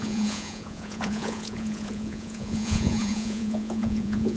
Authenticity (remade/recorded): remade